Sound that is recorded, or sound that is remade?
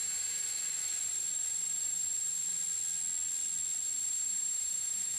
recorded